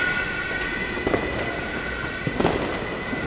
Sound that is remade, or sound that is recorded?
recorded